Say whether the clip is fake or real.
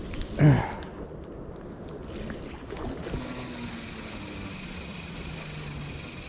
real